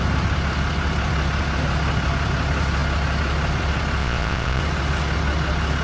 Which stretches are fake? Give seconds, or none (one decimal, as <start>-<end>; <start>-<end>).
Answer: 4.0-4.6